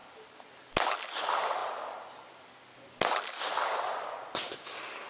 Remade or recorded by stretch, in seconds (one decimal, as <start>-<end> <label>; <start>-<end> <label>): 0.0-5.1 recorded